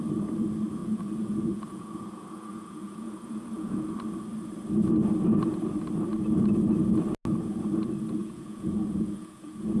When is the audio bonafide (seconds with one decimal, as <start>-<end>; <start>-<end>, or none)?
0.0-0.8; 3.9-8.2